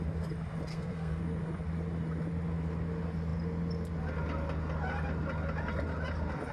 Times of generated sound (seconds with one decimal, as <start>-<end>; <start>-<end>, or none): 0.7-1.2